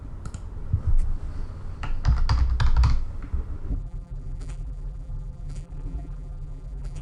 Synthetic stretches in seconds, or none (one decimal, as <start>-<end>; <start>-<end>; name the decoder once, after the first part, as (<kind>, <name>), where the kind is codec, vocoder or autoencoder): 3.7-7.0 (vocoder, BigVGAN v2)